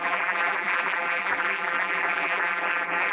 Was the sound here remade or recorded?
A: remade